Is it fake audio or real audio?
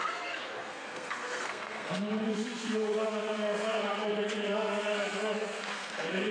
fake